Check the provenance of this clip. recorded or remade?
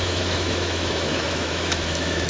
remade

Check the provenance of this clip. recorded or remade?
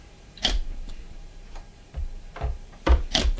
remade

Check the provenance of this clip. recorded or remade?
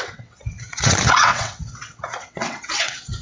remade